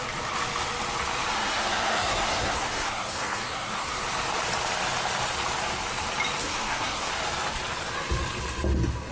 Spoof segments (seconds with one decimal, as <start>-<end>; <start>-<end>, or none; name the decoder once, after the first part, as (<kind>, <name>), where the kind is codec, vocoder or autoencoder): 1.3-3.9 (codec, SNAC); 6.4-7.1